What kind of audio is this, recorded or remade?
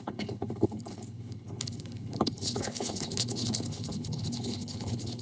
remade